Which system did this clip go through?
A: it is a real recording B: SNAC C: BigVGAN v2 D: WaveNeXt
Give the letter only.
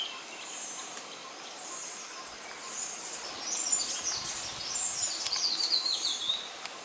A